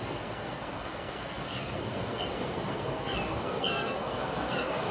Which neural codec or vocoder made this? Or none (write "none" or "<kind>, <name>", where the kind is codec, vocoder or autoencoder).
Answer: codec, SNAC